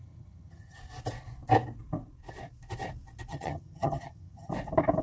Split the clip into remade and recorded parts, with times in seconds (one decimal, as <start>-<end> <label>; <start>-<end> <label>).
0.0-0.8 remade; 0.8-3.3 recorded; 3.3-4.5 remade; 4.5-5.0 recorded